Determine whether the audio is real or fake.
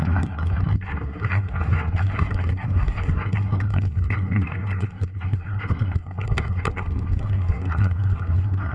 fake